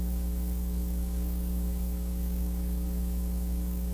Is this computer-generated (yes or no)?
yes